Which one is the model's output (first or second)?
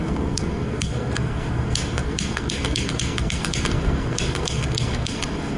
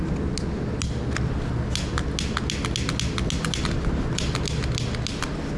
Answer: first